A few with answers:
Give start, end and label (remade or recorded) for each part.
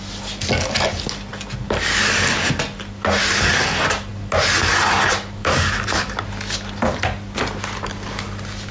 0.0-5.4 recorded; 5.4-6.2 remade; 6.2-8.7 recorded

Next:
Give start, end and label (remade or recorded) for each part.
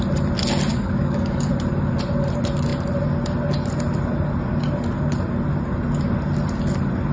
0.0-0.7 recorded; 0.7-1.5 remade; 1.5-7.1 recorded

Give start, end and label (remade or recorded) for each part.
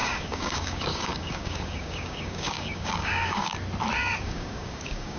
0.0-3.5 remade; 3.5-4.2 recorded; 4.2-5.2 remade